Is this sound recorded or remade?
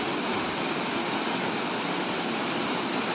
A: recorded